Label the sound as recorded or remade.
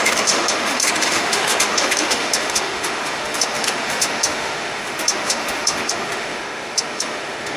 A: remade